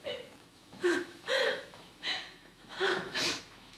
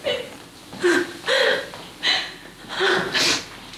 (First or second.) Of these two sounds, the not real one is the first